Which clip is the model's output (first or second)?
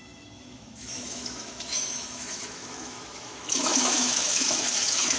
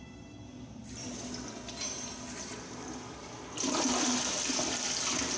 first